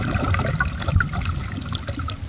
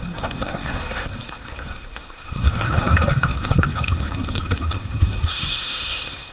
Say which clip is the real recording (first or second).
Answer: first